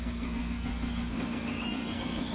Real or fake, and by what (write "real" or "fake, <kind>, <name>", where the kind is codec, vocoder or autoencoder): fake, codec, SNAC